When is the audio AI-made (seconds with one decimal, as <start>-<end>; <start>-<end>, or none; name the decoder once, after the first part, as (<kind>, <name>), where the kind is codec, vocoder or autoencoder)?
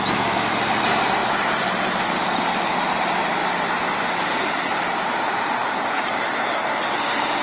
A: none